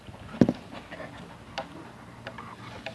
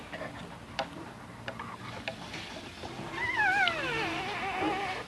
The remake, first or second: second